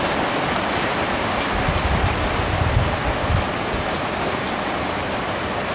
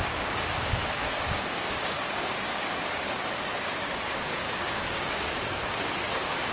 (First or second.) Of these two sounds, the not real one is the second